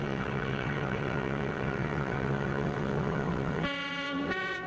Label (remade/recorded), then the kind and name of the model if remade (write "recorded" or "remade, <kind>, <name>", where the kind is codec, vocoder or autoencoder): remade, vocoder, WaveNeXt